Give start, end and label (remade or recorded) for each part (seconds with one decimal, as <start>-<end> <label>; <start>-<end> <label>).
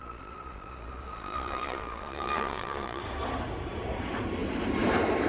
0.0-3.0 remade; 3.0-5.3 recorded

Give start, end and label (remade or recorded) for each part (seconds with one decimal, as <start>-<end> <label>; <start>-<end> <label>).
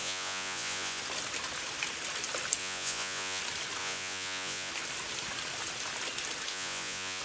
0.0-1.0 remade; 1.0-2.6 recorded; 2.6-3.4 remade; 3.4-3.8 recorded; 3.8-4.7 remade; 4.7-6.5 recorded; 6.5-7.2 remade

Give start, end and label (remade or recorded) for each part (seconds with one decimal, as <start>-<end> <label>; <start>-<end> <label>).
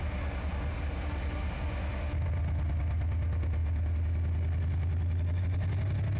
0.0-6.2 recorded